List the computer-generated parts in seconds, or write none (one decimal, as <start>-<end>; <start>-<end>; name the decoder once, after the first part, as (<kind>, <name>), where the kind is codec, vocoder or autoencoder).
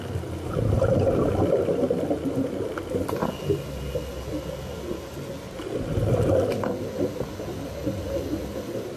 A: none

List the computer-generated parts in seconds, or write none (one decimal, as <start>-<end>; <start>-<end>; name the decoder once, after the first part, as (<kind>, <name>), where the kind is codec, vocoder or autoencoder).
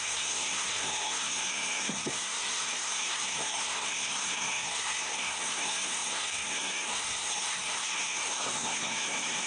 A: 0.0-9.5 (codec, SNAC)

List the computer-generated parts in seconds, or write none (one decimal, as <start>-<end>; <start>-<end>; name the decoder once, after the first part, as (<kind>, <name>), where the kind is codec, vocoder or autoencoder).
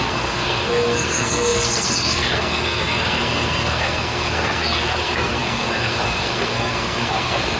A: 0.0-7.6 (codec, SNAC)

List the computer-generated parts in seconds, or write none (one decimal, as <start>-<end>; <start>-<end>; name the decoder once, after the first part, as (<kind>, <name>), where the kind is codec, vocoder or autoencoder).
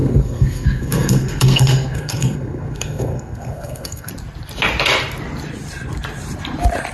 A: 0.0-4.1 (codec, SNAC)